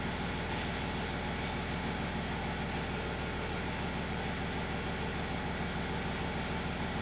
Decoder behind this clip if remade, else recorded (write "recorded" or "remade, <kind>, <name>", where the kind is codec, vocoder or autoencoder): recorded